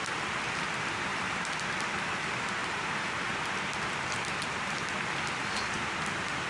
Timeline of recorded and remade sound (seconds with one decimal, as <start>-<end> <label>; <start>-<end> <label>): 0.0-1.1 recorded; 1.1-1.6 remade; 1.6-2.6 recorded; 2.6-6.5 remade